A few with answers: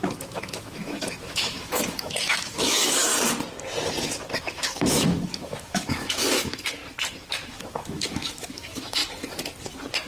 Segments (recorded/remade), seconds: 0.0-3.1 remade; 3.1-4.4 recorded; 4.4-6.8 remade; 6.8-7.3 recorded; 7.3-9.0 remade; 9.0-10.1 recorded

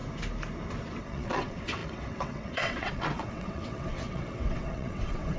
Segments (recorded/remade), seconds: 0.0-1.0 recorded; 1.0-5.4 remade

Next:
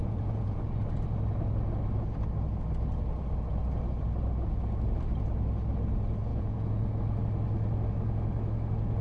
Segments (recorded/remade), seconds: 0.0-0.6 remade; 0.6-6.3 recorded; 6.3-6.9 remade; 6.9-9.0 recorded